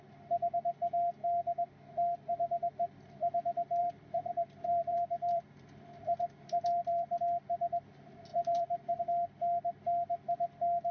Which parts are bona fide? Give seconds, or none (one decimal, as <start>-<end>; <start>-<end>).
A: 0.0-3.8; 7.2-8.3; 9.0-10.9